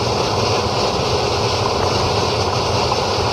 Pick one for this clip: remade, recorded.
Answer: recorded